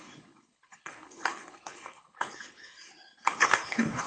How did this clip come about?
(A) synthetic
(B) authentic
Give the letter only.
A